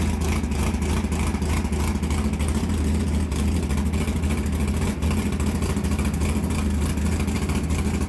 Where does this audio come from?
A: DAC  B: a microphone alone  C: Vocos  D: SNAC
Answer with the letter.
B